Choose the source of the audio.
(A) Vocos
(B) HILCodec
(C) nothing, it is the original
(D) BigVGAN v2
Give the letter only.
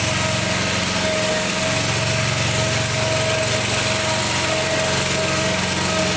C